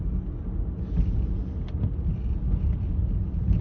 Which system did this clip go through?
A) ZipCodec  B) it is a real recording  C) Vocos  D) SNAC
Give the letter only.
B